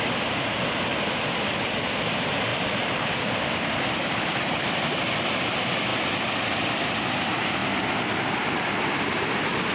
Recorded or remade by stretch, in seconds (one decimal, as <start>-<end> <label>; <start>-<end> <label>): 0.0-2.5 recorded; 2.5-4.2 remade; 4.2-9.7 recorded

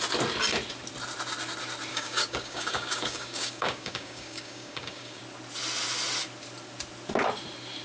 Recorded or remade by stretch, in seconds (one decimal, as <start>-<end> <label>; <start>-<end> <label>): 0.0-1.9 recorded; 1.9-5.2 remade; 5.2-7.8 recorded